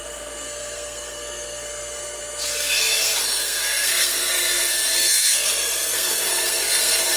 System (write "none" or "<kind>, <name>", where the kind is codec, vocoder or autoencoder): codec, SNAC